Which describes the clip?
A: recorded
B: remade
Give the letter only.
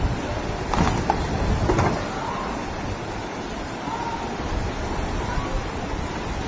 A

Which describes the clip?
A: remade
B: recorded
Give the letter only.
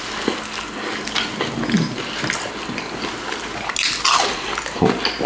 B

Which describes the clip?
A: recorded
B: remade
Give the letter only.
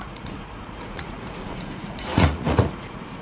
B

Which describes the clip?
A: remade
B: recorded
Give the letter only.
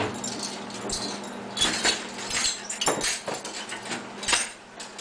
B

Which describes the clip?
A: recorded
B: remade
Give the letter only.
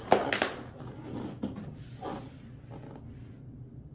A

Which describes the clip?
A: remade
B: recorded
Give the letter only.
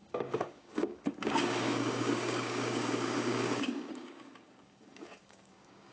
A